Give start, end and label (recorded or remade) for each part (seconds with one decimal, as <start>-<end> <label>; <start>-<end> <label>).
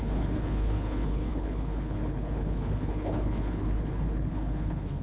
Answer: 0.0-5.0 remade